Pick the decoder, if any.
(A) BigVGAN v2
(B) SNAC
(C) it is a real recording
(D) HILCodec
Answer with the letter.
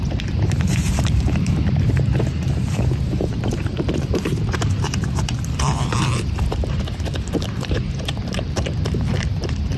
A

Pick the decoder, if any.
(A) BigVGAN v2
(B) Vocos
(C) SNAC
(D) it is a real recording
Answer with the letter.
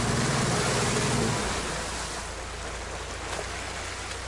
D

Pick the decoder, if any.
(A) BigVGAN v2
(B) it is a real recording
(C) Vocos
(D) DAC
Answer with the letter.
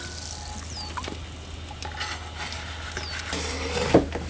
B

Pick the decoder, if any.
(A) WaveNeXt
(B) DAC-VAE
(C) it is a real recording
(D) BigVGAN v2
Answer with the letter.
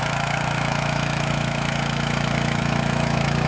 B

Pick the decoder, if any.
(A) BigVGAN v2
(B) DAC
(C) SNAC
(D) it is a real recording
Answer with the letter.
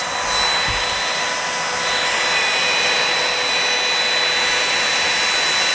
D